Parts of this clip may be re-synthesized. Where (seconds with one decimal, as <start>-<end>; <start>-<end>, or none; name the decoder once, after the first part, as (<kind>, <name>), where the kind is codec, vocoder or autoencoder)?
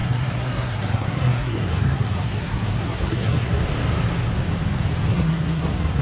0.0-3.6 (codec, SNAC); 5.1-6.0